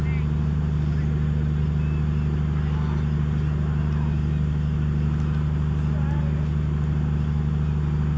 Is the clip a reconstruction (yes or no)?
no